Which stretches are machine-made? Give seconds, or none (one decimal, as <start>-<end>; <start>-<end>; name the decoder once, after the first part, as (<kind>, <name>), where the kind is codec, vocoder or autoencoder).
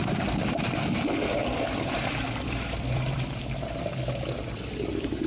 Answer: 1.4-3.4 (vocoder, BigVGAN v2)